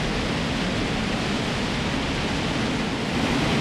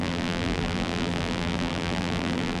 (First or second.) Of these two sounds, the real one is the first